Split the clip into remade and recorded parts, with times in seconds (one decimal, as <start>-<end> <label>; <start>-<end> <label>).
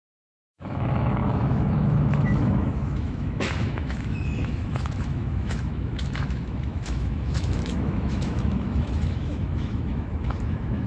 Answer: 0.0-10.9 remade